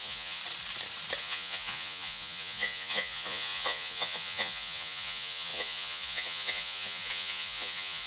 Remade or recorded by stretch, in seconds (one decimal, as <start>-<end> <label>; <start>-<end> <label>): 0.0-0.4 remade; 0.4-1.2 recorded; 1.2-8.1 remade